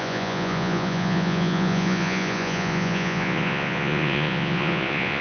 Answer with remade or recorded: remade